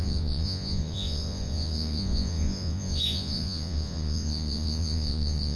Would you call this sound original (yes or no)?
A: no